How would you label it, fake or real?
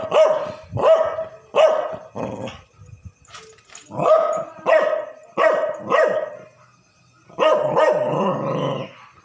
real